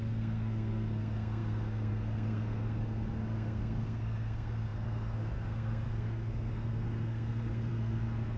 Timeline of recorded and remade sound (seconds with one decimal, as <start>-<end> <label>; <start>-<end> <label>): 0.0-8.4 remade